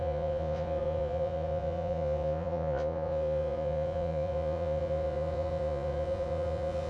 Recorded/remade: remade